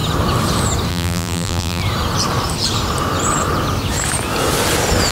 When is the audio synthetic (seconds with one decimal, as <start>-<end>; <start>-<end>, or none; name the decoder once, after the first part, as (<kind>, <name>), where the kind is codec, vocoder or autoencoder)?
0.9-1.8 (vocoder, BigVGAN v2)